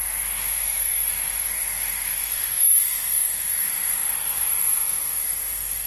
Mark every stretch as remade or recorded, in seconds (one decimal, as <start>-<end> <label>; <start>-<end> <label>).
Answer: 0.0-5.9 remade